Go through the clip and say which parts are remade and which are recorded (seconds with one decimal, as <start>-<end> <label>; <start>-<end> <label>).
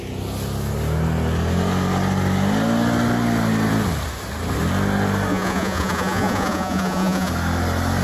0.0-5.3 recorded; 5.3-7.3 remade; 7.3-8.0 recorded